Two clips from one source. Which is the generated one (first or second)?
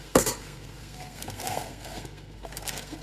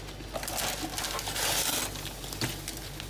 first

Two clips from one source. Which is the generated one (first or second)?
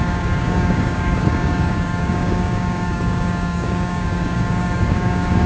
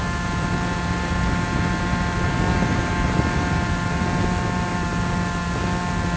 first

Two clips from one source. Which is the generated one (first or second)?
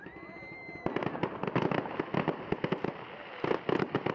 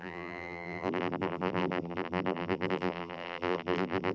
second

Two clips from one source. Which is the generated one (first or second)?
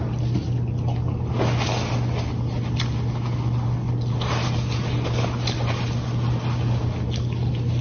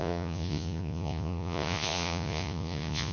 second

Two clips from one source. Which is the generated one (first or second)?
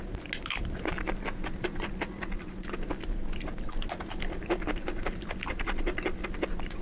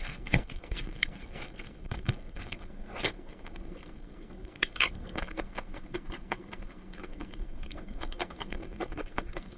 second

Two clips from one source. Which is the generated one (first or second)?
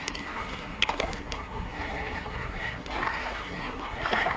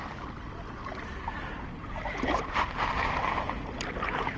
first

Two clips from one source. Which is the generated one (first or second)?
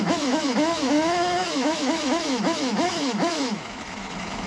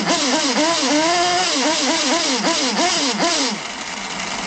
first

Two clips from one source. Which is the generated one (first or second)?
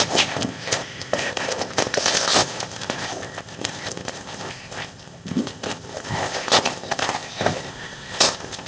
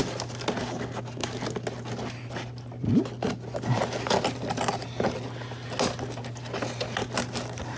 first